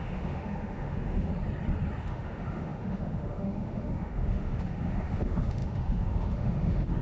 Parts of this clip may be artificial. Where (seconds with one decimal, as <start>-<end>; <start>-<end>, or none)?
0.0-1.3; 2.0-7.0